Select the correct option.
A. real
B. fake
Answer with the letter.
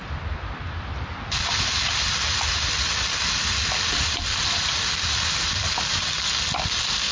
A